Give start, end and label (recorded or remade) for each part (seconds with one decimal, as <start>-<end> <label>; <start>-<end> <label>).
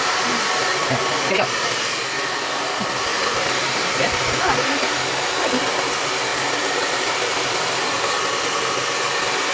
0.0-1.0 remade; 1.0-3.1 recorded; 3.1-4.4 remade; 4.4-6.3 recorded; 6.3-8.1 remade; 8.1-9.5 recorded